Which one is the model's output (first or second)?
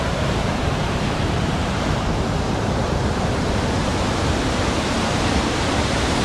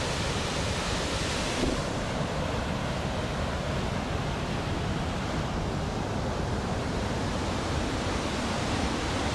first